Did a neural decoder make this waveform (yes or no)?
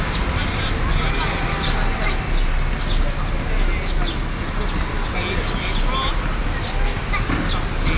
no